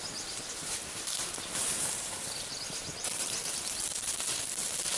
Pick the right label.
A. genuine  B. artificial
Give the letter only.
B